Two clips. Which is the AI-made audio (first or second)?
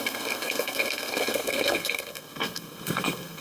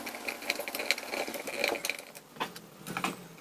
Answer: first